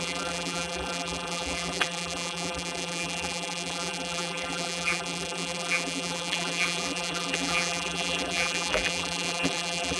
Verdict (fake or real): fake